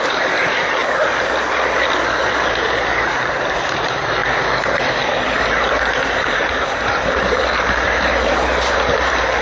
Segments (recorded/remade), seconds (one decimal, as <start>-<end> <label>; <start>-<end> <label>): 0.0-0.8 remade; 0.8-2.5 recorded; 2.5-9.4 remade